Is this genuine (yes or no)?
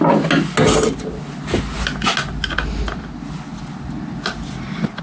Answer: yes